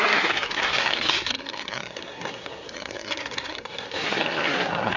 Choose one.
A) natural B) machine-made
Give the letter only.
B